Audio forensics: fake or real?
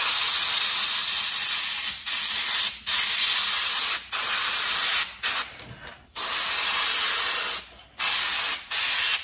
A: real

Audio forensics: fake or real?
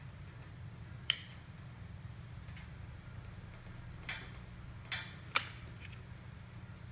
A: real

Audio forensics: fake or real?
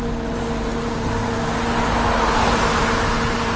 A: real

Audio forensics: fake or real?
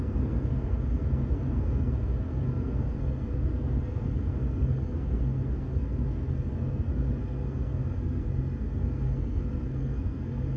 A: fake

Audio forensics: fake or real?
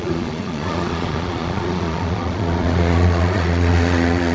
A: fake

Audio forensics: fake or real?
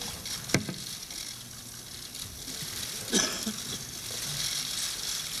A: real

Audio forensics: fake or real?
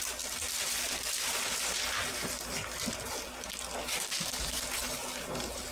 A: real